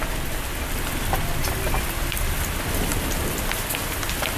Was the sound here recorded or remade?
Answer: recorded